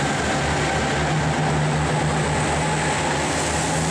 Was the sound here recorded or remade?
recorded